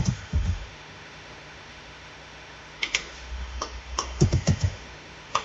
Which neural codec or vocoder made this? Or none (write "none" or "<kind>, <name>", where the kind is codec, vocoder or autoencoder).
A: autoencoder, DAC-VAE